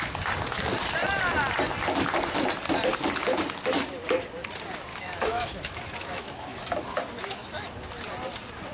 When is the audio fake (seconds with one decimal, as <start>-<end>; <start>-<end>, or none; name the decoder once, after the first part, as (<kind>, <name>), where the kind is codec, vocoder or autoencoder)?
4.9-7.7 (autoencoder, DAC-VAE)